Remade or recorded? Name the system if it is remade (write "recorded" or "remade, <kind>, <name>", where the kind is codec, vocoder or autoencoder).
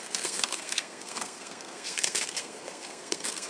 remade, codec, SNAC